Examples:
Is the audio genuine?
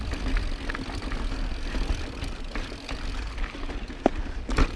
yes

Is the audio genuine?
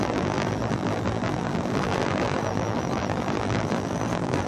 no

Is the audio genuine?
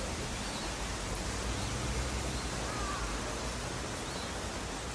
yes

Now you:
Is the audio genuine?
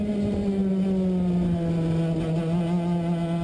yes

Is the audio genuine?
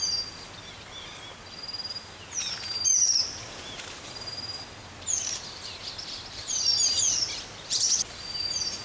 yes